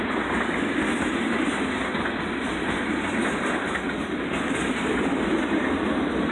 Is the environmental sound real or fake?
real